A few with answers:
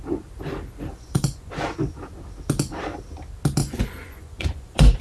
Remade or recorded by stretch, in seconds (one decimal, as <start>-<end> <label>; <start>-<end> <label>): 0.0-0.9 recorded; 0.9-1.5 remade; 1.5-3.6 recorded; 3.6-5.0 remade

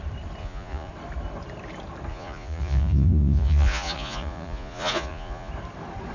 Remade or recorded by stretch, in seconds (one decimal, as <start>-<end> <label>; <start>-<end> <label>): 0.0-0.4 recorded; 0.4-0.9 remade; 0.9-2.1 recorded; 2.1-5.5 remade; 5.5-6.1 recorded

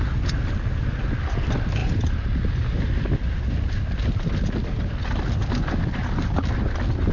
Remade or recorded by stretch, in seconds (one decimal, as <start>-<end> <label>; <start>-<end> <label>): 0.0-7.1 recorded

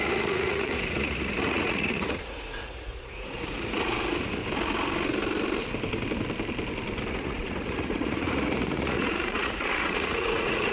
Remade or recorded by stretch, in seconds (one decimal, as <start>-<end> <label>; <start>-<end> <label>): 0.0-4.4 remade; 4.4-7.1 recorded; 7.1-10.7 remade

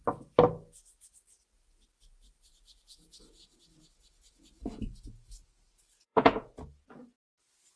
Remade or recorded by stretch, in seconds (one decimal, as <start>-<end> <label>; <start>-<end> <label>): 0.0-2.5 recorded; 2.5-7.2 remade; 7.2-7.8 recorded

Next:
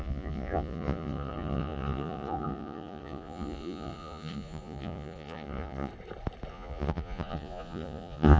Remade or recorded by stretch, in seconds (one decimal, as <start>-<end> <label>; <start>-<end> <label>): 0.0-5.9 remade; 5.9-6.5 recorded; 6.5-8.4 remade